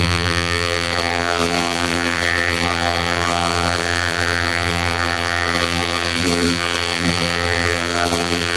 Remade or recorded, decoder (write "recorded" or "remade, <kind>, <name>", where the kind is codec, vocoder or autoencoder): remade, vocoder, BigVGAN v2